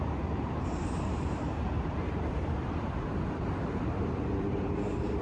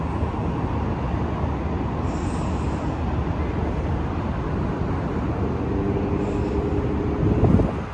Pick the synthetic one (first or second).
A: first